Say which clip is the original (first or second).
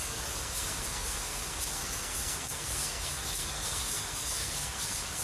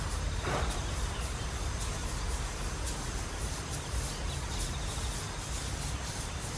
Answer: second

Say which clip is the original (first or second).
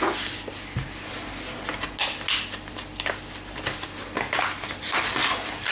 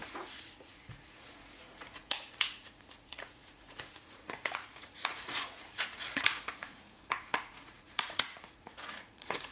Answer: first